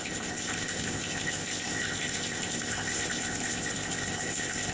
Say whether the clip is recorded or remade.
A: remade